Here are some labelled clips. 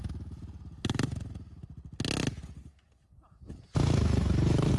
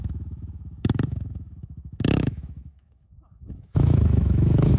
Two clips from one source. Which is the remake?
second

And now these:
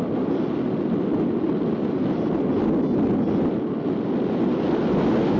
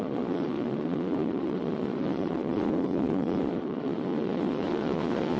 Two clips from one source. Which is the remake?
second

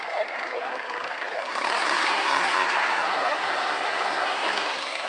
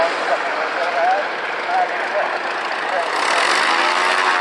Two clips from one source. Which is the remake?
first